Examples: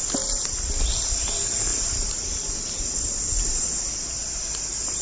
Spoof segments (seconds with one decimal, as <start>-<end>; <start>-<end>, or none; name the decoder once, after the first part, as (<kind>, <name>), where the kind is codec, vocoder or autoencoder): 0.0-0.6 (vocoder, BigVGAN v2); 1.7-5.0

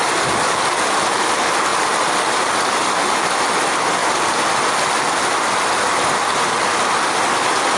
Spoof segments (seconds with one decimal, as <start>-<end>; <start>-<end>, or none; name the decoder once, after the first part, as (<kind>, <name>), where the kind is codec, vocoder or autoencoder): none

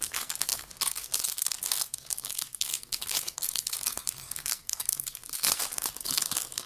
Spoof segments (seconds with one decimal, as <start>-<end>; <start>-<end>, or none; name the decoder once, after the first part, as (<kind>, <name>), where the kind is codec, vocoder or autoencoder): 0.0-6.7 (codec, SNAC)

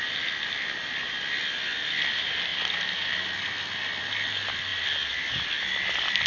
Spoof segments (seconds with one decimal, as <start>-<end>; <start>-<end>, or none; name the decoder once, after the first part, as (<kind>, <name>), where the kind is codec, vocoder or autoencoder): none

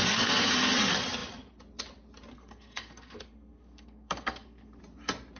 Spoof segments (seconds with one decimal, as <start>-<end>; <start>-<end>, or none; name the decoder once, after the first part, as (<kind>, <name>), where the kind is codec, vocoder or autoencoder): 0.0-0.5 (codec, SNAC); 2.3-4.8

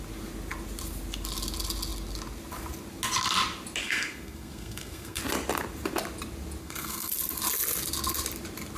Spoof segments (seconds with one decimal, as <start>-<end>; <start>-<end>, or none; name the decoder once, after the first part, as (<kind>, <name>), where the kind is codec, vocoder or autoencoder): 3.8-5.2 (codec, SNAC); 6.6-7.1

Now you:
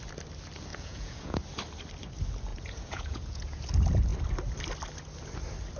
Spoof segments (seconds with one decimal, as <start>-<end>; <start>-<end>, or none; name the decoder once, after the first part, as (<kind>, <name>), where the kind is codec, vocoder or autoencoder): 0.7-1.4 (vocoder, Vocos); 2.5-3.6